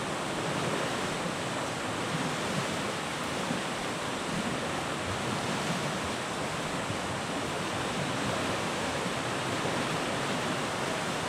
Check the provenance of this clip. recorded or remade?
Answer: recorded